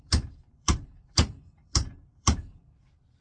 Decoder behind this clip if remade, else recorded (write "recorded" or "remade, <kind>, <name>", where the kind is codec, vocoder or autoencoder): remade, vocoder, BigVGAN v2